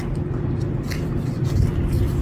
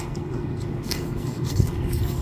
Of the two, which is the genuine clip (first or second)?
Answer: first